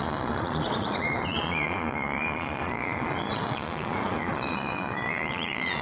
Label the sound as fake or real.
fake